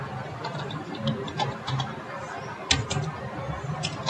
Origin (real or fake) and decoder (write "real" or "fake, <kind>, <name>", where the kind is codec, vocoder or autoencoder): real